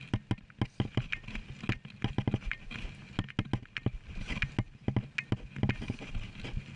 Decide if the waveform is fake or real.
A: real